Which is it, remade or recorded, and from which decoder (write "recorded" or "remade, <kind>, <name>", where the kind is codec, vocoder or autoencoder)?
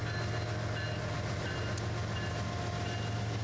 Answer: recorded